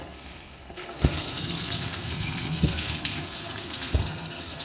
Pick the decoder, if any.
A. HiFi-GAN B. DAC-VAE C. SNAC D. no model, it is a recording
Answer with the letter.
C